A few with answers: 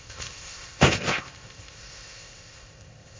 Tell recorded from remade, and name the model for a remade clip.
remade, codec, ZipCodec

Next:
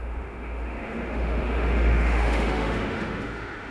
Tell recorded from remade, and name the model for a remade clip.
remade, autoencoder, DAC-VAE